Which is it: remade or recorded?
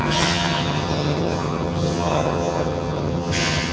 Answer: remade